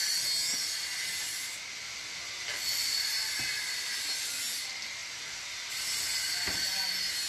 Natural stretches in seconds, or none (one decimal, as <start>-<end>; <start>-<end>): 0.0-7.3